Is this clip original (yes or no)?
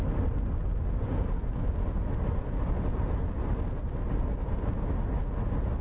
yes